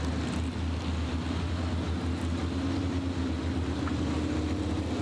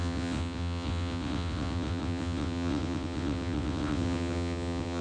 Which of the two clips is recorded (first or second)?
first